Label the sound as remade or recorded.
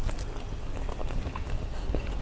recorded